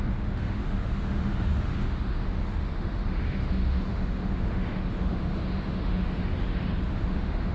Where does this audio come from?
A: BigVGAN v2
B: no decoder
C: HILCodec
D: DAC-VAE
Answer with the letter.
D